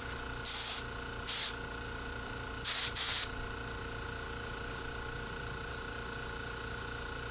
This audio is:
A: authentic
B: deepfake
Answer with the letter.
B